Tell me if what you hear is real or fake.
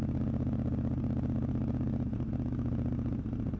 real